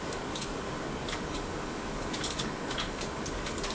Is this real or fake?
fake